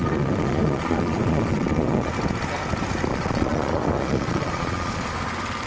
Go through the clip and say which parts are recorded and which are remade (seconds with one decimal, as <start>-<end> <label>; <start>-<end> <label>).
0.0-2.1 remade; 2.1-3.1 recorded; 3.1-5.1 remade; 5.1-5.7 recorded